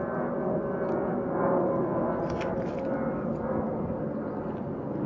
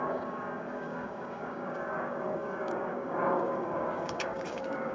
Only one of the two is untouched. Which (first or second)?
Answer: first